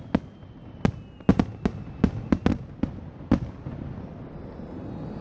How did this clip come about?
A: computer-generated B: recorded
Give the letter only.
B